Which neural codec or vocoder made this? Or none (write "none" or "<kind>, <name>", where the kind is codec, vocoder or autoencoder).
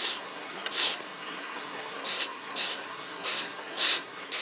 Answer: codec, SNAC